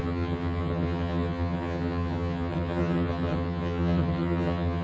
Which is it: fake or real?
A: fake